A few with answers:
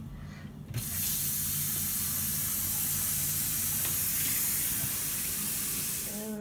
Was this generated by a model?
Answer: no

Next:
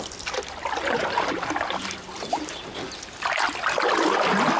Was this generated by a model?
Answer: no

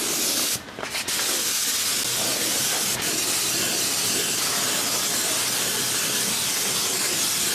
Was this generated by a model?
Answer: no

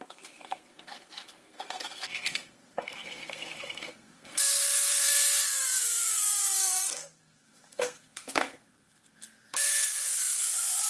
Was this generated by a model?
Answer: yes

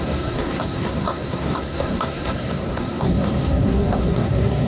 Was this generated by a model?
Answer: yes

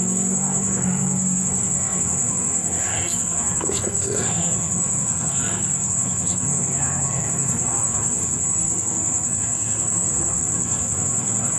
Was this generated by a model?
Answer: yes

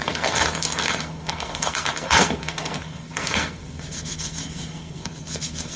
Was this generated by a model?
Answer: yes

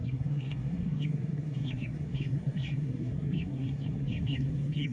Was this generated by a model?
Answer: yes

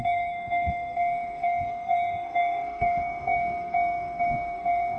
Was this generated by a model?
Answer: yes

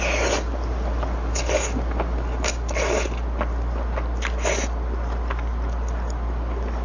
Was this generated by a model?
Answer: no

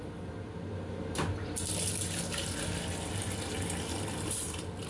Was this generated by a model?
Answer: no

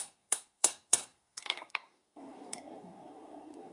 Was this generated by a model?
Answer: yes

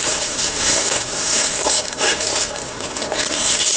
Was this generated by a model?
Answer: yes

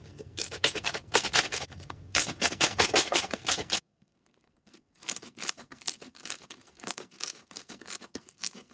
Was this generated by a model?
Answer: yes